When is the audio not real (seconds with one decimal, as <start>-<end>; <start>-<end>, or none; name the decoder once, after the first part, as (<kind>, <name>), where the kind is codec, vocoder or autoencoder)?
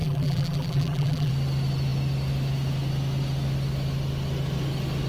0.0-1.3 (vocoder, BigVGAN v2)